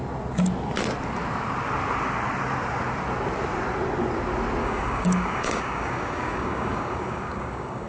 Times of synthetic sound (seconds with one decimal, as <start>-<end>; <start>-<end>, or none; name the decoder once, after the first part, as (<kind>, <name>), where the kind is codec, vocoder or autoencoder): 4.6-7.9 (codec, DAC)